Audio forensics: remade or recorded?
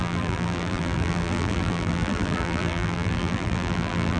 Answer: remade